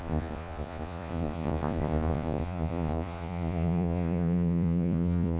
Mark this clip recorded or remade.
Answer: remade